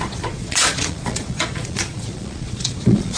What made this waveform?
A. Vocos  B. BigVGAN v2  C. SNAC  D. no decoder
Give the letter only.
A